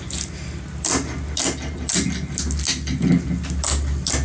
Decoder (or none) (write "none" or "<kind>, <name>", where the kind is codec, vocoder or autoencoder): none